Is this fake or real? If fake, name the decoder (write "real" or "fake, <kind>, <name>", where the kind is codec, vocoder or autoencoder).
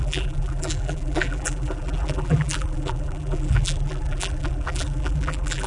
fake, vocoder, BigVGAN v2